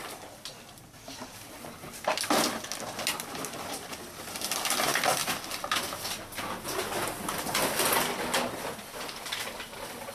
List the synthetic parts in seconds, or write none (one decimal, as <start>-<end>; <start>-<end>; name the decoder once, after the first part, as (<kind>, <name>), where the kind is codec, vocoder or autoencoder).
none